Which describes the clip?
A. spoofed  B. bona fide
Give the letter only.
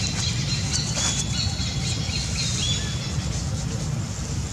B